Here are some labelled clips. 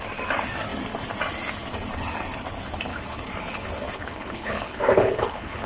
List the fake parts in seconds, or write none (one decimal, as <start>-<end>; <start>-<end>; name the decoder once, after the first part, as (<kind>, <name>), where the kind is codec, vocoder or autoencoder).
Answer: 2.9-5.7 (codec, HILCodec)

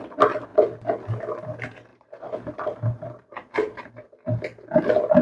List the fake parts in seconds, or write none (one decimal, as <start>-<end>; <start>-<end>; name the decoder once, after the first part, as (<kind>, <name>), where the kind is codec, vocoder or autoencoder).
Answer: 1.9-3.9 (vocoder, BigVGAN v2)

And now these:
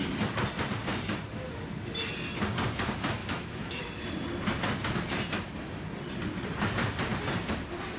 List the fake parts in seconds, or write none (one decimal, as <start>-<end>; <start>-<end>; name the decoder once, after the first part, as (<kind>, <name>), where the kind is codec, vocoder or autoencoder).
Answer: 3.2-3.8 (autoencoder, DAC-VAE)

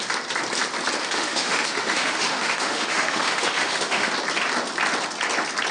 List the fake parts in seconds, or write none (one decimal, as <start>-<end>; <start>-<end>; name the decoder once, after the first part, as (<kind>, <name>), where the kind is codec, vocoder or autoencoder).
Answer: 1.0-4.1 (autoencoder, DAC-VAE)

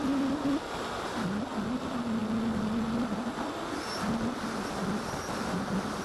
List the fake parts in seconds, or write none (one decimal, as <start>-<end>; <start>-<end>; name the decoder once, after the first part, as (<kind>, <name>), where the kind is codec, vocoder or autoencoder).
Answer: none

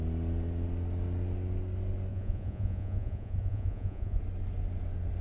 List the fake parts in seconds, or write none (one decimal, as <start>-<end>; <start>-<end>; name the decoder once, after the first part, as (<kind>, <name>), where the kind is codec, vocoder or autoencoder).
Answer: 2.1-4.2 (vocoder, Vocos)

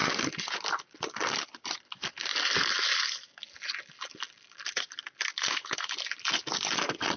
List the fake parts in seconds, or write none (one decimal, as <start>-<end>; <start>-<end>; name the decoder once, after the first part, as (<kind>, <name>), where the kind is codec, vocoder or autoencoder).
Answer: none

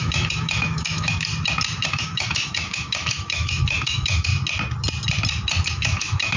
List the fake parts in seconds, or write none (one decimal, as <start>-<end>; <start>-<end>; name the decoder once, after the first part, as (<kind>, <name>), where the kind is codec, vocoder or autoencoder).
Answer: 0.0-1.3 (autoencoder, DAC-VAE); 1.9-4.3; 5.7-6.4